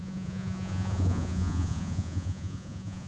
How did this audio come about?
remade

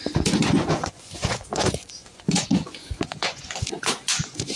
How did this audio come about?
remade